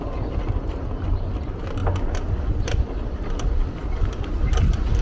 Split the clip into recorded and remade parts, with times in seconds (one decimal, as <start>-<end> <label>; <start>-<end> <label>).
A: 0.0-5.0 recorded